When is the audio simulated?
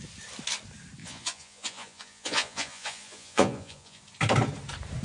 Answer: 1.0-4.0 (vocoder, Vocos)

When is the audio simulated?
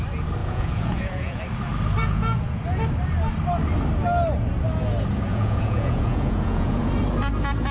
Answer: 0.4-1.4 (vocoder, Vocos); 2.0-2.6; 5.3-6.9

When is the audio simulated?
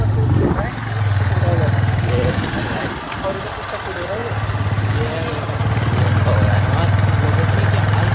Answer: none